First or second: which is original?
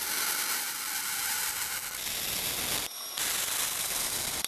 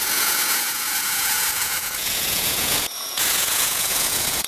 first